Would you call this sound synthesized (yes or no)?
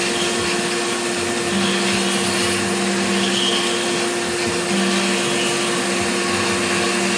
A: no